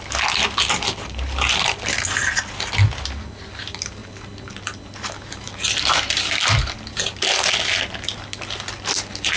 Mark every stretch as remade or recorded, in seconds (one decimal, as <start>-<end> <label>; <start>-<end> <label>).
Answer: 0.0-9.4 recorded